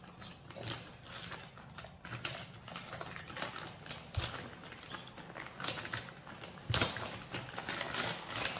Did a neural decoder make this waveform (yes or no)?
no